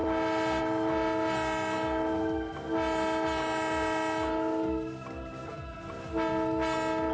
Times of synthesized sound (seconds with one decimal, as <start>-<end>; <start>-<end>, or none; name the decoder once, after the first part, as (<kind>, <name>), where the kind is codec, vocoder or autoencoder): none